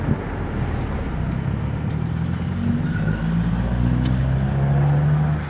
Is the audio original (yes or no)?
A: yes